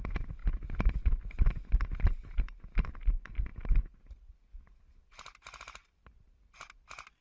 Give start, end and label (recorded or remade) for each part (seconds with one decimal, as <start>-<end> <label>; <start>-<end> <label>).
0.0-7.2 recorded

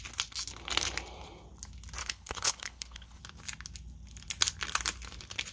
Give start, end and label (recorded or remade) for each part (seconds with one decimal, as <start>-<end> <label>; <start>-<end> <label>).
0.0-2.0 recorded; 2.0-3.2 remade; 3.2-5.5 recorded

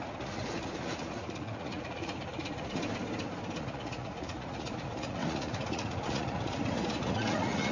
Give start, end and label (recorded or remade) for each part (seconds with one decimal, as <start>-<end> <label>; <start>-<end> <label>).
0.0-2.8 remade; 2.8-3.6 recorded; 3.6-7.7 remade

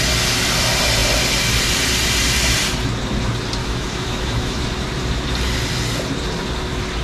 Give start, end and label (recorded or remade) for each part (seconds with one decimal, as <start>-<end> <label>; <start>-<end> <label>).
0.0-3.6 recorded; 3.6-4.6 remade; 4.6-7.0 recorded

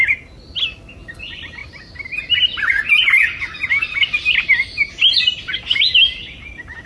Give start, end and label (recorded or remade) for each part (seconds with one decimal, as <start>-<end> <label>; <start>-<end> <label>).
0.0-6.9 recorded

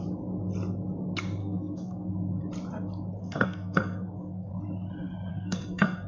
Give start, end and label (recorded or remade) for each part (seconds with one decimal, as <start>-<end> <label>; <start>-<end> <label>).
0.0-1.4 recorded; 1.4-2.1 remade; 2.1-3.2 recorded; 3.2-4.5 remade; 4.5-5.3 recorded; 5.3-6.1 remade